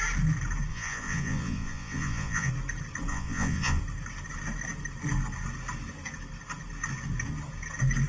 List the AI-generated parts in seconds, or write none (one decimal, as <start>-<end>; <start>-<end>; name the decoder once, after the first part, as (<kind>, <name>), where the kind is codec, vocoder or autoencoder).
0.7-2.5 (vocoder, Vocos); 3.1-3.8